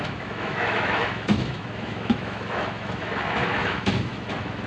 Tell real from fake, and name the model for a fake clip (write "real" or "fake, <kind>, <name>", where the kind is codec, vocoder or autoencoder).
fake, autoencoder, DAC-VAE